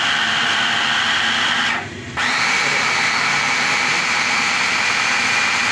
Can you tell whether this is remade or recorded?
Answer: recorded